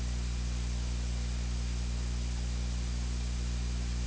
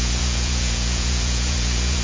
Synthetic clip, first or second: second